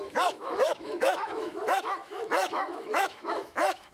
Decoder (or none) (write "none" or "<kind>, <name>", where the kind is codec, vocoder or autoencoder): autoencoder, DAC-VAE